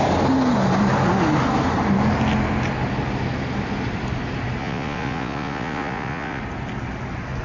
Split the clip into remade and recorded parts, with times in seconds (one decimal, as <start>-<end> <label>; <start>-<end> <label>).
0.0-4.6 recorded; 4.6-6.4 remade; 6.4-7.4 recorded